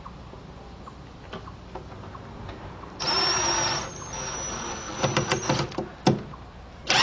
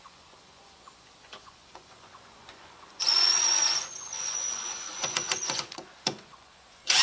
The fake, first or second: second